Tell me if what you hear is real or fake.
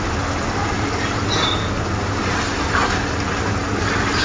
real